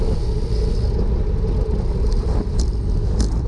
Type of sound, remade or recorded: recorded